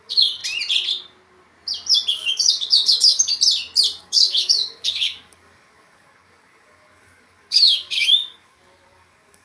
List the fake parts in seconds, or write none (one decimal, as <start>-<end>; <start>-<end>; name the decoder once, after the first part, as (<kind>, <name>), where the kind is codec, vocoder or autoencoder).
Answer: 0.0-0.4 (codec, DAC); 2.1-3.3; 4.0-9.4